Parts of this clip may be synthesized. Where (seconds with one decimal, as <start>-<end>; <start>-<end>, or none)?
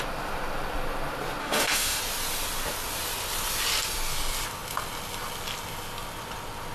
1.4-2.0